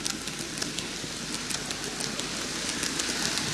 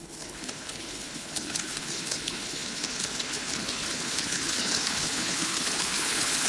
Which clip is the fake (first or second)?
second